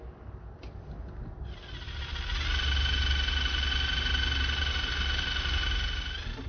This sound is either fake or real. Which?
real